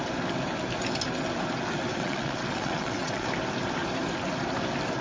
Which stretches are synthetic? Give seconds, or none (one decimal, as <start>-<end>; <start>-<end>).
1.9-3.3